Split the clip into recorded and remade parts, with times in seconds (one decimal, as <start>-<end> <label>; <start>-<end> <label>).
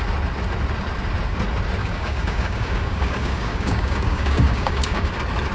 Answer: 0.0-1.8 recorded; 1.8-5.1 remade; 5.1-5.5 recorded